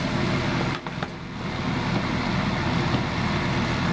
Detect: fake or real real